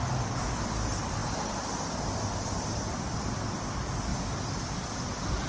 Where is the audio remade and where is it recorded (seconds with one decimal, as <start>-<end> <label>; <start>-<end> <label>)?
0.0-5.5 recorded